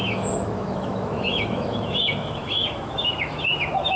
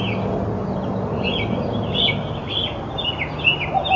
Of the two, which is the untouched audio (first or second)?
second